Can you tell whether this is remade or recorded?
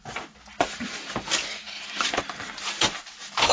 recorded